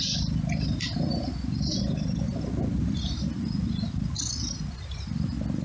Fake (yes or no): no